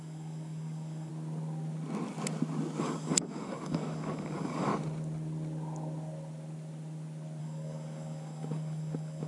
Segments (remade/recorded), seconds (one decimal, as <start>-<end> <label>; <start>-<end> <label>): 0.0-1.1 remade; 1.1-2.8 recorded; 2.8-4.7 remade; 4.7-7.4 recorded; 7.4-9.3 remade